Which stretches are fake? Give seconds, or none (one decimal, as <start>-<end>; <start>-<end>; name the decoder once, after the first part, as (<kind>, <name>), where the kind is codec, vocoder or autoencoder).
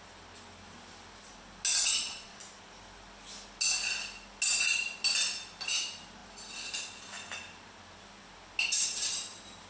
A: 1.7-2.4 (vocoder, Vocos)